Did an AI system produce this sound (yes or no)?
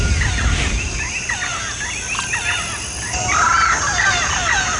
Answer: no